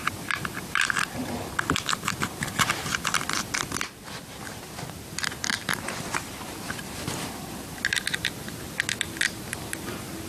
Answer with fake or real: fake